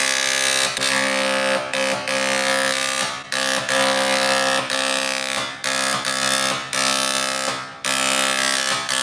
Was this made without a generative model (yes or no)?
yes